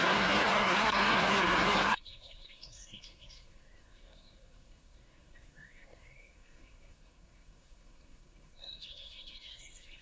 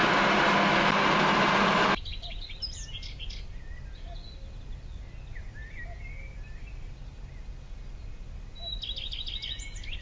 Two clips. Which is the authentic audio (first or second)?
second